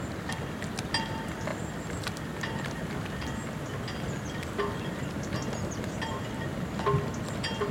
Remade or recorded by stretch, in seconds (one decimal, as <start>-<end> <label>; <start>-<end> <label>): 0.0-7.7 recorded